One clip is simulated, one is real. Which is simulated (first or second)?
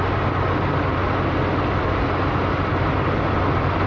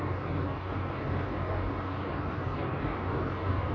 second